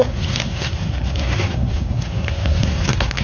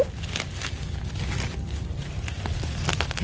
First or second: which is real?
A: second